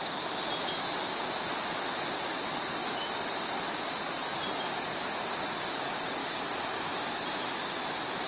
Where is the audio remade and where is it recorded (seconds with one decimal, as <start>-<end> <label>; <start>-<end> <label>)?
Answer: 0.0-1.5 recorded; 1.5-2.3 remade; 2.3-2.8 recorded; 2.8-4.3 remade; 4.3-8.3 recorded